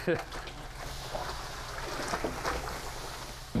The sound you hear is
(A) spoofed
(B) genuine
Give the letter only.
B